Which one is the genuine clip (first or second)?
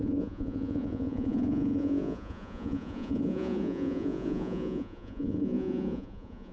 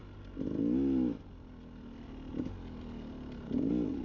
second